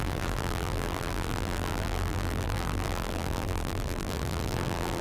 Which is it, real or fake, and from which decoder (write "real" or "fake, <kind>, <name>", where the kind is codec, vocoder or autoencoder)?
fake, vocoder, BigVGAN v2